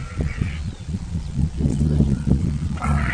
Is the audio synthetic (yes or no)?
yes